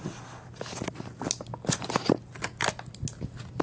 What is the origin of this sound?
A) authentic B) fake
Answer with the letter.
A